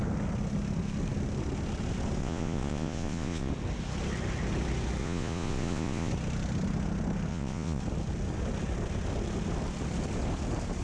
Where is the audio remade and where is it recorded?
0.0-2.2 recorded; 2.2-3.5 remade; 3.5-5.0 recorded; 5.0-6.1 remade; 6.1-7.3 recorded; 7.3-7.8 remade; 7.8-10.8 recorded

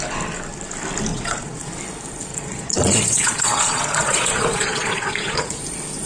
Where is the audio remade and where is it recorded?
0.0-1.1 recorded; 1.1-1.7 remade; 1.7-2.3 recorded; 2.3-5.6 remade; 5.6-6.1 recorded

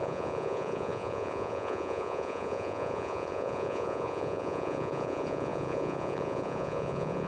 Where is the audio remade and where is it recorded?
0.0-7.3 remade

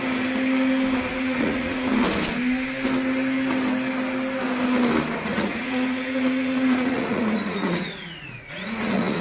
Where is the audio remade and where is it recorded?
0.0-1.1 recorded; 1.1-1.9 remade; 1.9-5.3 recorded; 5.3-9.2 remade

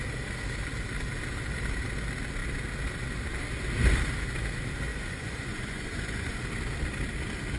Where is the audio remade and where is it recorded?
0.0-4.9 recorded; 4.9-6.4 remade; 6.4-7.6 recorded

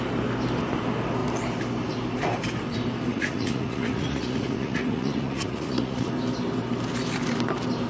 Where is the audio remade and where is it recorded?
0.0-3.1 recorded; 3.1-6.1 remade; 6.1-7.9 recorded

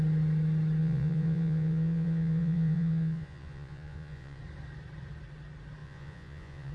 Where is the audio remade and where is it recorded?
0.0-0.8 recorded; 0.8-4.4 remade; 4.4-5.8 recorded; 5.8-6.7 remade